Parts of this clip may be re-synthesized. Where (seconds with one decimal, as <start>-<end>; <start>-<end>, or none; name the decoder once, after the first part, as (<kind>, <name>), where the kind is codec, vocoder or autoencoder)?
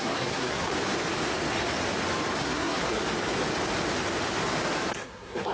0.0-0.7 (codec, SNAC); 2.4-3.0; 4.9-5.5